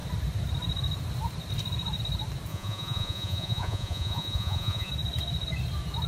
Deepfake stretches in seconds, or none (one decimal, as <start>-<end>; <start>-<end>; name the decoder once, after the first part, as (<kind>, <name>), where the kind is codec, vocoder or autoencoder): 2.5-4.9 (vocoder, Vocos)